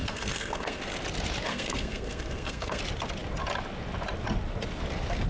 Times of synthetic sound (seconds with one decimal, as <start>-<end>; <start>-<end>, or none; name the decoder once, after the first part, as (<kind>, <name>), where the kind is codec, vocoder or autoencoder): 0.0-0.8 (codec, SNAC); 1.5-2.8